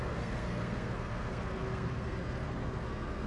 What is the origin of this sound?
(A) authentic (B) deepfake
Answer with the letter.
B